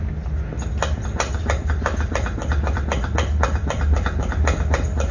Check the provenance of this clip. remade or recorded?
recorded